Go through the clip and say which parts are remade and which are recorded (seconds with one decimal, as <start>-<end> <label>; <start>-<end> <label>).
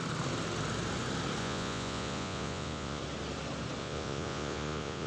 0.0-1.4 recorded; 1.4-3.0 remade; 3.0-3.8 recorded; 3.8-5.1 remade